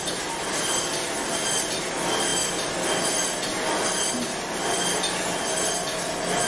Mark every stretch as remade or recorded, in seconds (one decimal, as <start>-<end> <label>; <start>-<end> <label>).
0.0-6.5 recorded